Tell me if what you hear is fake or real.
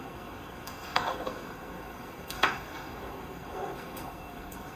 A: fake